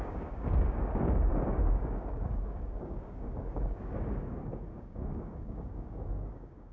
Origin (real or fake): fake